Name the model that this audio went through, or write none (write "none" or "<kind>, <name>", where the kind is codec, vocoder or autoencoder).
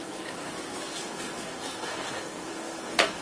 codec, SNAC